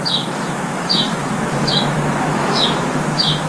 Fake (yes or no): yes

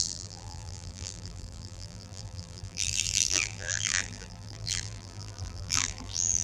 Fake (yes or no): yes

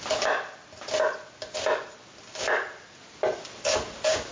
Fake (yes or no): no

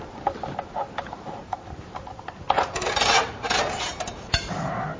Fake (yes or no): yes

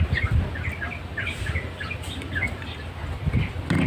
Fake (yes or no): no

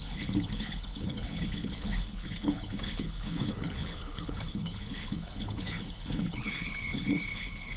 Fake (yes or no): yes